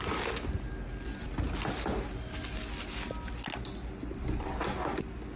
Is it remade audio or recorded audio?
recorded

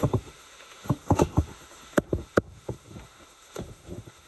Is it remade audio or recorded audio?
remade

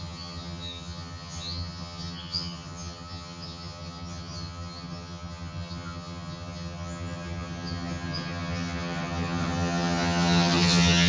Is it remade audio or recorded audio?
remade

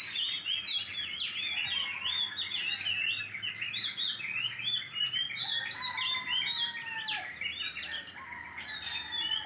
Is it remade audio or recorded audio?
recorded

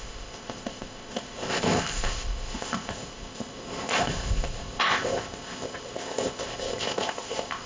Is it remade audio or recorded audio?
remade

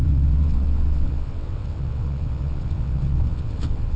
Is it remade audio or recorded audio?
remade